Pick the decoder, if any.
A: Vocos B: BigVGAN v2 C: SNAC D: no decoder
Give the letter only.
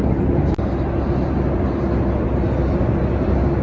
D